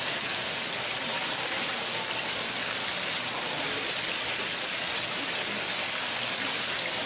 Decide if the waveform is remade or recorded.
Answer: recorded